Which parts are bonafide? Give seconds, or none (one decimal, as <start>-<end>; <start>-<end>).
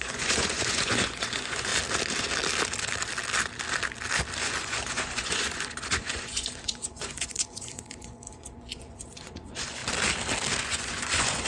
1.7-4.4; 9.8-10.6